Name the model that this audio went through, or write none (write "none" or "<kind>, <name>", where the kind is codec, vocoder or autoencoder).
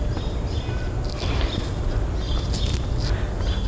none